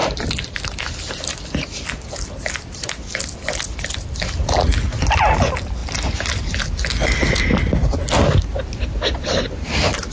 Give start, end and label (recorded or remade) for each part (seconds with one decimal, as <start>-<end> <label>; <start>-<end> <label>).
0.0-0.9 remade; 0.9-7.8 recorded; 7.8-10.1 remade